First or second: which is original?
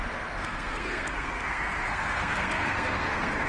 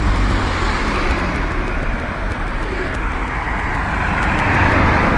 second